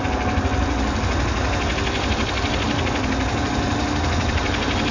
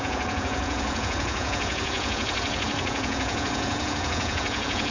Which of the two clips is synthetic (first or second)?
second